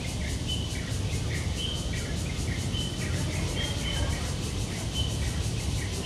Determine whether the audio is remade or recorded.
recorded